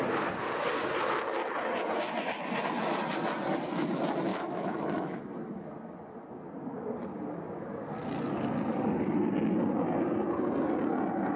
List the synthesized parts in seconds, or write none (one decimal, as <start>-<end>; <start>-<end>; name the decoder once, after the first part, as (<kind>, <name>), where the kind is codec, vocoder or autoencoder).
4.3-5.2 (autoencoder, DAC-VAE)